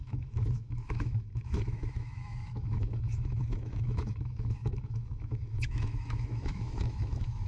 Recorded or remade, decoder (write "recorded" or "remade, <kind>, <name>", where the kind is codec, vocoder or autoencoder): remade, autoencoder, DAC-VAE